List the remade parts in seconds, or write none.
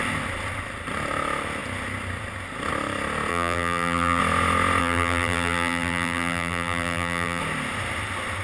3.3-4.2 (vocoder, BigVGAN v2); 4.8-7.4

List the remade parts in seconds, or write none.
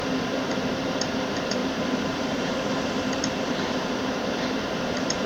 0.0-5.3 (vocoder, BigVGAN v2)